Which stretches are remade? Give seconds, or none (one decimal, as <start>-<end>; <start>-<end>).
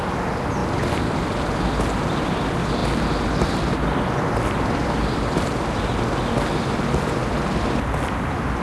4.8-5.6; 7.2-8.1